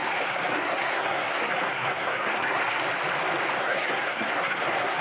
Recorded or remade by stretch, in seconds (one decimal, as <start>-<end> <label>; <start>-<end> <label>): 0.0-2.8 remade; 2.8-3.6 recorded; 3.6-5.0 remade